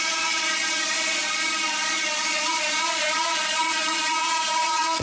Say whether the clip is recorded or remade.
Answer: remade